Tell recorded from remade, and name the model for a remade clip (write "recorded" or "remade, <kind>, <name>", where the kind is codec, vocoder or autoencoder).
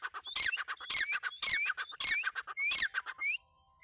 recorded